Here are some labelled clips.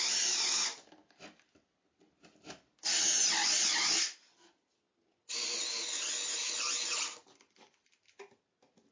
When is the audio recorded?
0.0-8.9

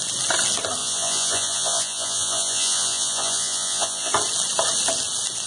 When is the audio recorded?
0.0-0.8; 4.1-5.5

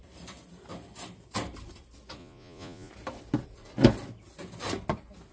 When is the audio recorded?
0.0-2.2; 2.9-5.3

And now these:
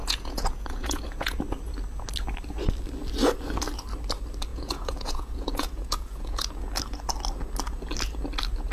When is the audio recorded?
1.4-4.5; 6.5-8.7